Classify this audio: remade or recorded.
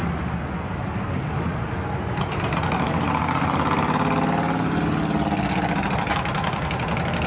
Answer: recorded